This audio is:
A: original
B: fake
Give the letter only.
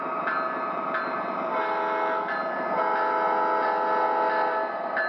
A